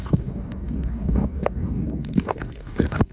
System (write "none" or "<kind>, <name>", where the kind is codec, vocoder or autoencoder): codec, DAC